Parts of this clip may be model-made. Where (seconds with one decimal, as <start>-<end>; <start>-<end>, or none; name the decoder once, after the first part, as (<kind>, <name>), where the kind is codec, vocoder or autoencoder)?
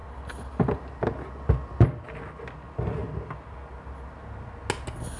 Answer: none